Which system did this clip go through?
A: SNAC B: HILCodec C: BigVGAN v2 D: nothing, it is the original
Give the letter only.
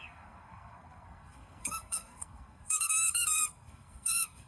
A